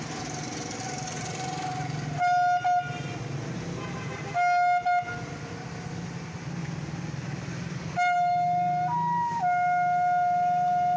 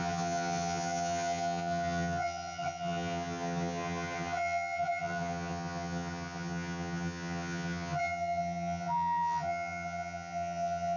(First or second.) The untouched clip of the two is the first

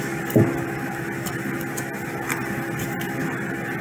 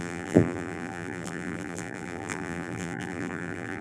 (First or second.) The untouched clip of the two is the first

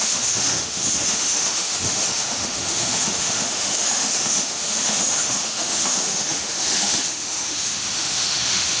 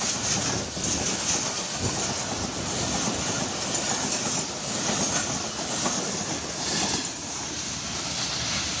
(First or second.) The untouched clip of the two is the second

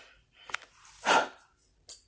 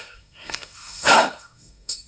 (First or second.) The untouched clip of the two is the first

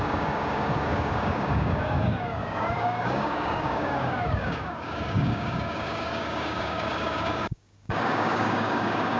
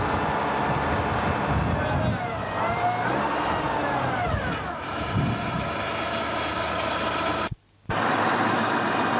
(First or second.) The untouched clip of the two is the second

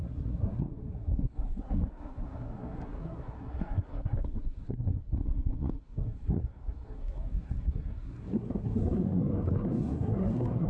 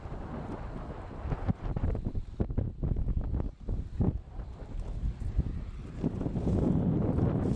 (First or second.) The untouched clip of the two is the second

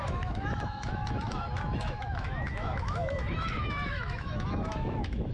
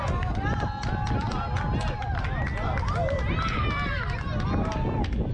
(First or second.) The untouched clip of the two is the second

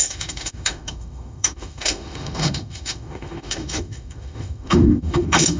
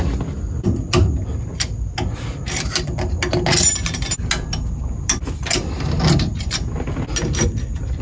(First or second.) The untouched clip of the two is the second